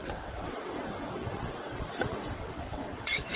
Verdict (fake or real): fake